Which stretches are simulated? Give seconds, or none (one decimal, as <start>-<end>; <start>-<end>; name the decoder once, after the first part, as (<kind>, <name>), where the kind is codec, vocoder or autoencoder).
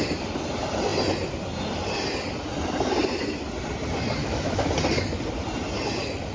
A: 4.2-4.7 (autoencoder, DAC-VAE)